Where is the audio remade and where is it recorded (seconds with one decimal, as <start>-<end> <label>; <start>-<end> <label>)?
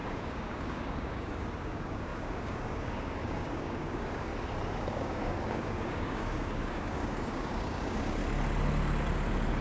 0.0-4.3 remade; 4.3-4.9 recorded; 4.9-8.2 remade; 8.2-9.6 recorded